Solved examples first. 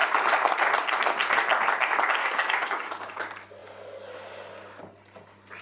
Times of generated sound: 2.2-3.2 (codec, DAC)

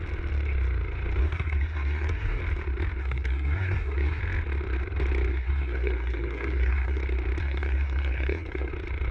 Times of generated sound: 1.2-2.4 (codec, SNAC); 3.0-4.2; 5.3-7.0; 7.4-8.7

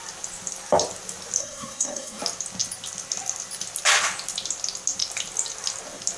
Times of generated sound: 1.4-2.2 (codec, SNAC)